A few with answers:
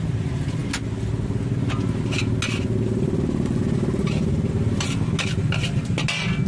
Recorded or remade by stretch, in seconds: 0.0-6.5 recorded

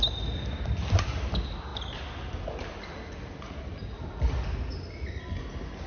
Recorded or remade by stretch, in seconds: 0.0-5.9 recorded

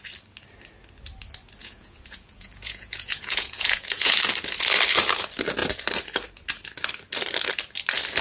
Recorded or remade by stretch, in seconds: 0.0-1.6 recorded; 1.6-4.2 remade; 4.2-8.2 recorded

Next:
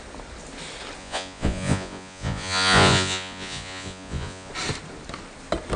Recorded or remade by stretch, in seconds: 0.0-1.0 recorded; 1.0-4.5 remade; 4.5-5.8 recorded

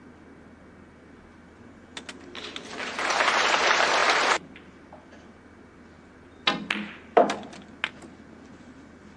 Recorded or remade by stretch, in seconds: 0.0-9.2 recorded

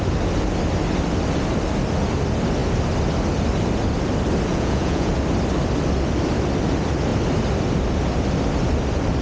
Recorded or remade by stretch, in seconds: 0.0-4.5 recorded; 4.5-5.1 remade; 5.1-9.2 recorded